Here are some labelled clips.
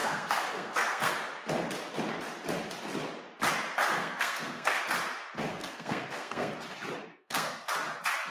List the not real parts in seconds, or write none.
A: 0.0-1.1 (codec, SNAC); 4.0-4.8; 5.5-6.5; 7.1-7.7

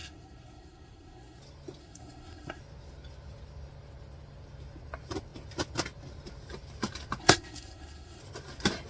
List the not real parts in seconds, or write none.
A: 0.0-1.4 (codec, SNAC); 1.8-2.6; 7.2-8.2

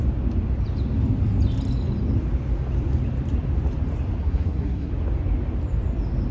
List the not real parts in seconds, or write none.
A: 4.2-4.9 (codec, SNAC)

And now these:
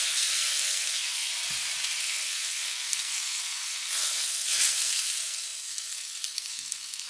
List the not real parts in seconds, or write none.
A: 0.0-1.3 (codec, SNAC); 2.0-7.1